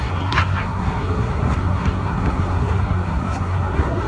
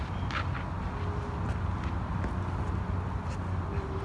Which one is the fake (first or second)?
first